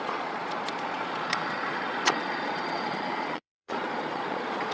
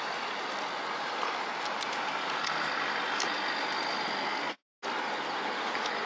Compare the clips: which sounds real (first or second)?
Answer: second